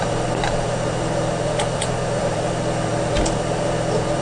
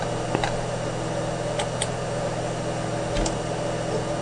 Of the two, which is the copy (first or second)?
first